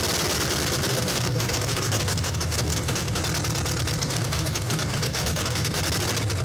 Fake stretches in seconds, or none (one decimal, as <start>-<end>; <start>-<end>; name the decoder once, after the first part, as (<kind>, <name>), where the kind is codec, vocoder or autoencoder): 0.9-3.2 (codec, DAC); 4.0-5.8